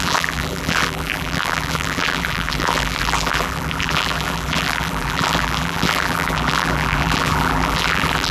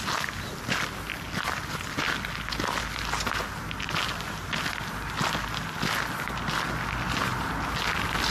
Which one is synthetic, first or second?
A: first